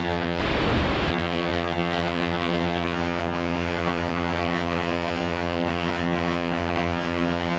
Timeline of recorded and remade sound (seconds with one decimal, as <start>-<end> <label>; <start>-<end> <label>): 0.0-0.4 remade; 0.4-1.1 recorded; 1.1-7.6 remade